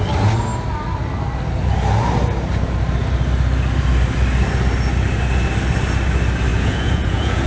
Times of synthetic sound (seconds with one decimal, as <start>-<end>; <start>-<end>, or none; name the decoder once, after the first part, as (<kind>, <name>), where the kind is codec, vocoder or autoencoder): 6.5-7.5 (vocoder, Vocos)